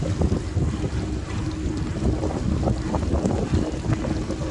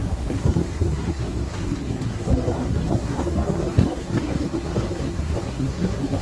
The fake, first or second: second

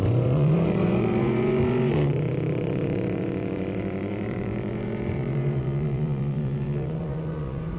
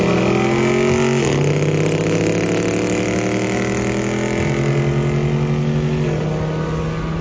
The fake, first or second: first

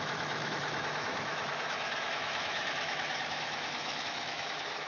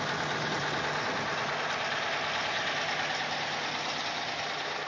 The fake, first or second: first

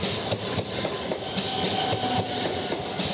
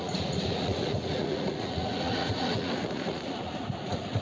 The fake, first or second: second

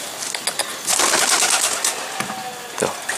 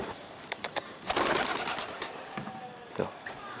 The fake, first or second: second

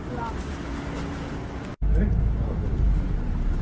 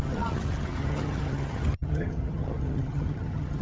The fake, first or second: second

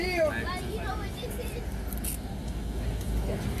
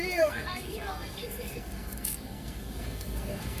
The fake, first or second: second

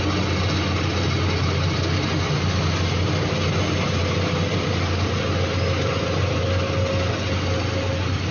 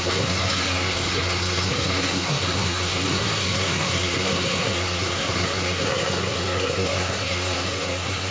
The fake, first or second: second